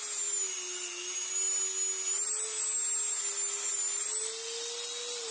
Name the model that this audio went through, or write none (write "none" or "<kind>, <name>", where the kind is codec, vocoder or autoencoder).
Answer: none